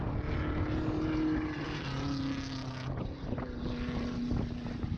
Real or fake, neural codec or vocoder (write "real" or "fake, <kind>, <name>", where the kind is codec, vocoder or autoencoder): real